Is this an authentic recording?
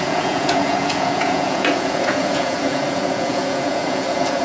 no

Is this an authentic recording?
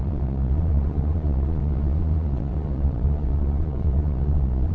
no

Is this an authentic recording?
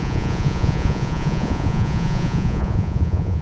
no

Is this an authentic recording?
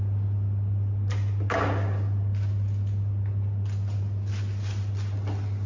yes